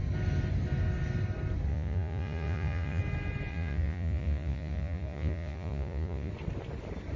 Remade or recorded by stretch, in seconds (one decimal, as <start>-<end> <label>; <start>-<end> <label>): 0.0-1.7 recorded; 1.7-3.0 remade; 3.0-3.5 recorded; 3.5-6.3 remade; 6.3-7.2 recorded

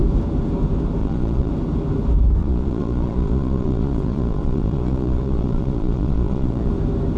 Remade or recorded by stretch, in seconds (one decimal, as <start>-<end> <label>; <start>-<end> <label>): 0.0-1.0 recorded; 1.0-1.5 remade; 1.5-2.4 recorded; 2.4-6.7 remade; 6.7-7.2 recorded

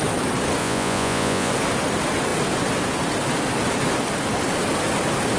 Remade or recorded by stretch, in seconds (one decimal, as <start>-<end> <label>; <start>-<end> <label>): 0.0-0.6 recorded; 0.6-1.5 remade; 1.5-5.4 recorded

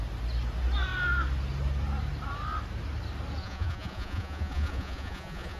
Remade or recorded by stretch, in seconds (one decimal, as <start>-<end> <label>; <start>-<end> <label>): 0.0-3.4 recorded; 3.4-5.6 remade

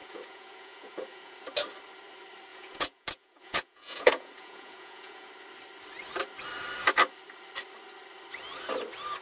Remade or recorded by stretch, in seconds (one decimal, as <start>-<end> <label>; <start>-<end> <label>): 0.0-1.4 remade; 1.4-2.5 recorded; 2.5-5.3 remade; 5.3-9.2 recorded

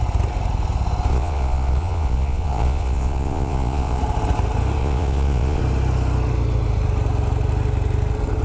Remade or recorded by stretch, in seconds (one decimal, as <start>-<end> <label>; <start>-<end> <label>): 0.0-1.1 recorded; 1.1-4.0 remade; 4.0-4.8 recorded; 4.8-5.6 remade; 5.6-8.4 recorded

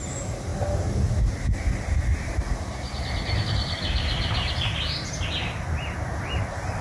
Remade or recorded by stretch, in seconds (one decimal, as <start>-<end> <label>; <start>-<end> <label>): 0.0-6.8 recorded